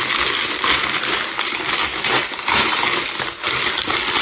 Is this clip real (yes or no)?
yes